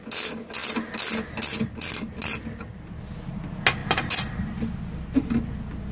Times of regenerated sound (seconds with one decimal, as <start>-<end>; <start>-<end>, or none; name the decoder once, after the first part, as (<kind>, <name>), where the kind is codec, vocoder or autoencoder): none